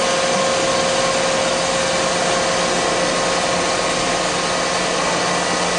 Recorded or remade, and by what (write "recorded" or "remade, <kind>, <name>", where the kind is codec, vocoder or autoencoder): recorded